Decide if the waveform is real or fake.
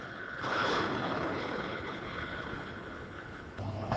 fake